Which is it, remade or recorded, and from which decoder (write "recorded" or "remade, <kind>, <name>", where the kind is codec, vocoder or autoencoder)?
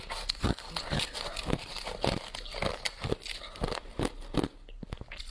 recorded